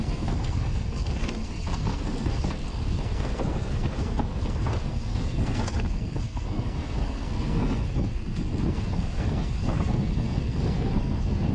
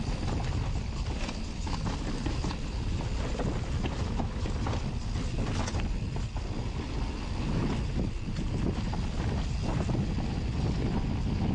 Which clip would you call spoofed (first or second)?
first